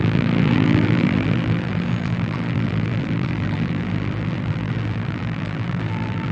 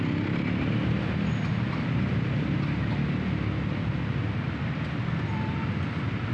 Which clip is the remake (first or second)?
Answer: first